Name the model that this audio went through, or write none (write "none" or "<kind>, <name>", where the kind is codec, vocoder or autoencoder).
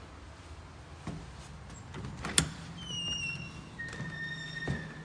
none